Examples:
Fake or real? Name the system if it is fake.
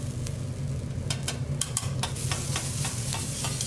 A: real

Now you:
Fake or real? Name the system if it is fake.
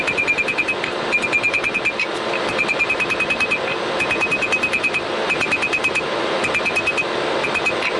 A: fake, vocoder, BigVGAN v2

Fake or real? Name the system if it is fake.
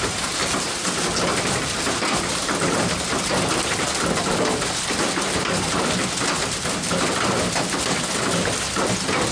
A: real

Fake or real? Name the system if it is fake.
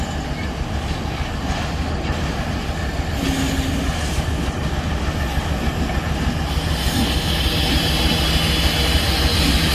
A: real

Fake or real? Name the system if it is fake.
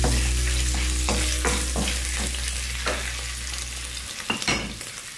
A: real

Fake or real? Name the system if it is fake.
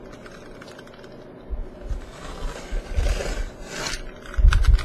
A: real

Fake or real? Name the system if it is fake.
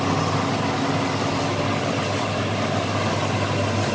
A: real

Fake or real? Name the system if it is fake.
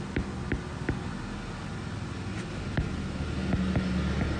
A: real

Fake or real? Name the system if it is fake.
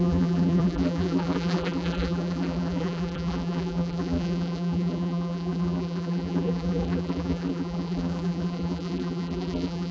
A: fake, vocoder, BigVGAN v2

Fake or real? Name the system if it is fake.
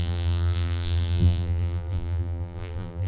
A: fake, vocoder, BigVGAN v2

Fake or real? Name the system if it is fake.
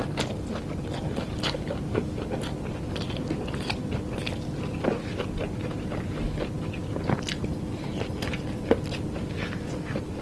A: real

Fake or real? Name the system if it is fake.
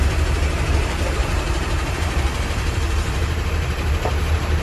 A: fake, vocoder, BigVGAN v2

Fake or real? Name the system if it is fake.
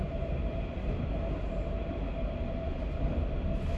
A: real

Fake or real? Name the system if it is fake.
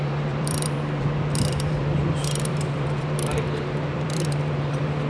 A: fake, vocoder, BigVGAN v2